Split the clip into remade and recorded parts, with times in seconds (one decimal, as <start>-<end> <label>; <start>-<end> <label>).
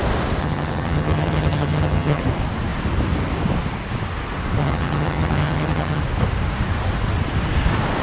0.0-0.4 recorded; 0.4-2.2 remade; 2.2-4.6 recorded; 4.6-6.0 remade; 6.0-8.0 recorded